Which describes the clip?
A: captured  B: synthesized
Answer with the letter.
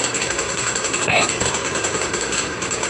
B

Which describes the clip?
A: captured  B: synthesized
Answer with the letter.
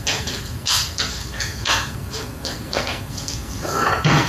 B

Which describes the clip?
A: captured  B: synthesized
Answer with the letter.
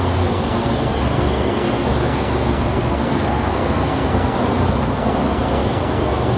B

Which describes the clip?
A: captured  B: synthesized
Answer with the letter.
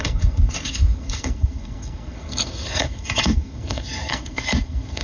B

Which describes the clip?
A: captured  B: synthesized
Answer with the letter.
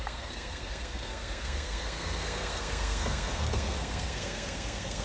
B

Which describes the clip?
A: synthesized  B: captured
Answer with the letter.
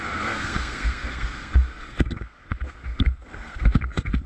A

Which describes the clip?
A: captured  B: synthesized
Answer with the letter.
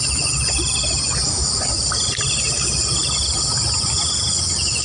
A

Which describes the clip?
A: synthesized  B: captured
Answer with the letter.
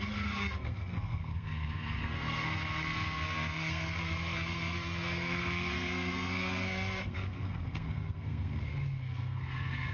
A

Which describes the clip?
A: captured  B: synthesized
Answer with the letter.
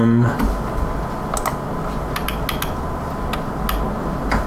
A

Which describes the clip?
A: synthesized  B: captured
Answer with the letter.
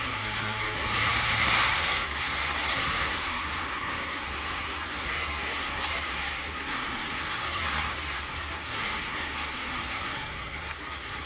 A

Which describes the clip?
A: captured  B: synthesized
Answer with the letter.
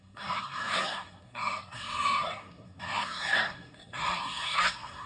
B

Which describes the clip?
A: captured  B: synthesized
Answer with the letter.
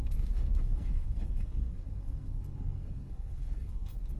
B